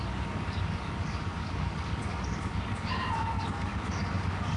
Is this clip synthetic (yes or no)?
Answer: yes